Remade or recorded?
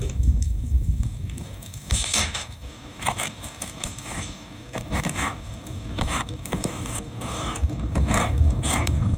remade